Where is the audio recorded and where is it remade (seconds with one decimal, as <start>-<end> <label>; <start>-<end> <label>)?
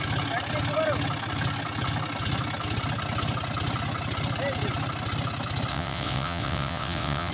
0.0-5.7 recorded; 5.7-7.3 remade